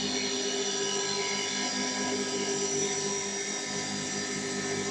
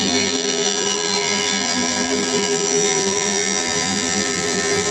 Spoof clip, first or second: second